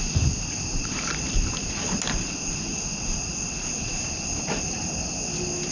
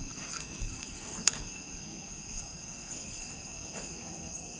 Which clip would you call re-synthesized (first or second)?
second